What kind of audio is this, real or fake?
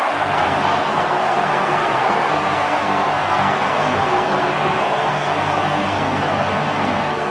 fake